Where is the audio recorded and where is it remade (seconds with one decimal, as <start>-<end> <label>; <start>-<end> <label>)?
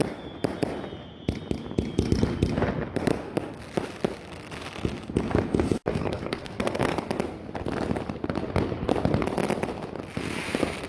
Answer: 0.0-5.9 recorded; 5.9-7.0 remade; 7.0-10.9 recorded